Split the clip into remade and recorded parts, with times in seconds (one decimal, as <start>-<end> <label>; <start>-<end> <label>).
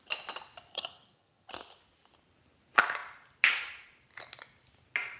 0.0-0.7 recorded; 0.7-1.5 remade; 1.5-5.2 recorded